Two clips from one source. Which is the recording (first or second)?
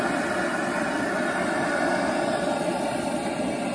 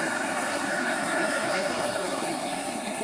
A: first